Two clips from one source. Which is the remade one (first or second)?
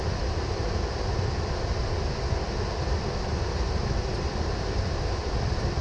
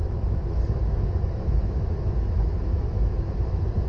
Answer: second